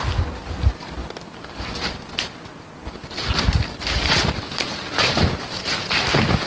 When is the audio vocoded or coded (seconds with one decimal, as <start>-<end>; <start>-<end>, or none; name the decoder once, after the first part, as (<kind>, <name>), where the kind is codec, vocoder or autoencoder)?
none